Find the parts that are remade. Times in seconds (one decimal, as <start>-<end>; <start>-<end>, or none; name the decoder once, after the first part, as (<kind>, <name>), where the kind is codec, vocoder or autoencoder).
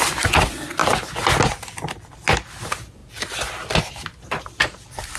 none